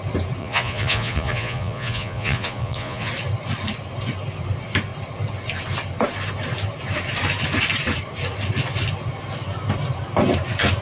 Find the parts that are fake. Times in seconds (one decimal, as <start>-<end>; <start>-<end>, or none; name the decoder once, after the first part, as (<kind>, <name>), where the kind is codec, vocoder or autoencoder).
0.4-3.1 (vocoder, Vocos)